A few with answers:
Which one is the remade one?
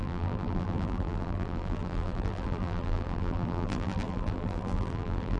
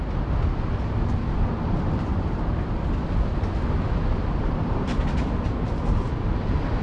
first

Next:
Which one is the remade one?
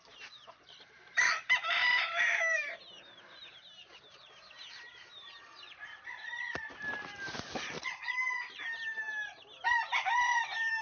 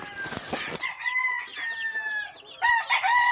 first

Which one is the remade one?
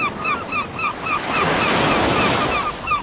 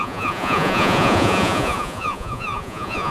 second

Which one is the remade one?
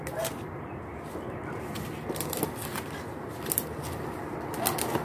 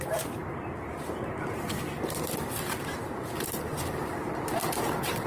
second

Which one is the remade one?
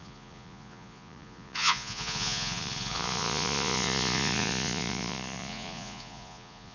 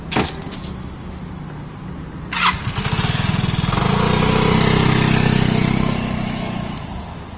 first